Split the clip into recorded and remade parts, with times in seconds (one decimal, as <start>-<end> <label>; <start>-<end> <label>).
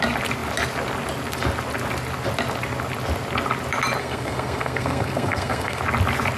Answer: 0.0-4.0 recorded; 4.0-5.8 remade; 5.8-6.4 recorded